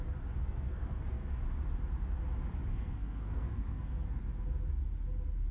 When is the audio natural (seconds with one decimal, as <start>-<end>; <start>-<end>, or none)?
0.0-0.4; 1.4-2.7; 4.2-5.5